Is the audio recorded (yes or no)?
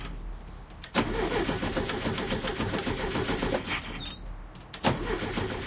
yes